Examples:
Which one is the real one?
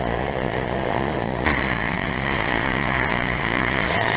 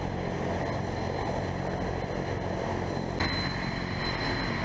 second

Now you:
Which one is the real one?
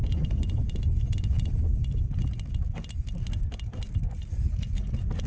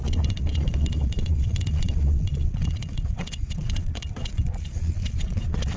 first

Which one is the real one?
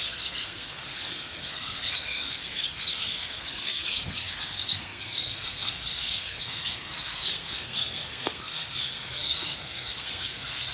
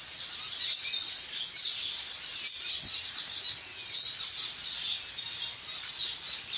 second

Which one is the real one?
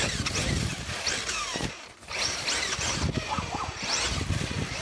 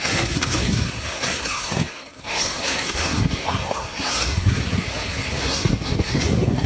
first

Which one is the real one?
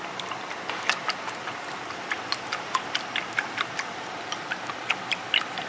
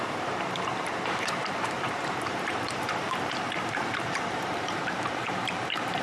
first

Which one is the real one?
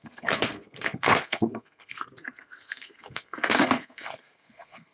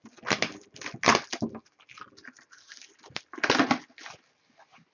second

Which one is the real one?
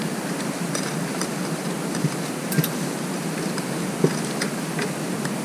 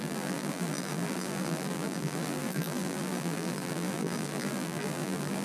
first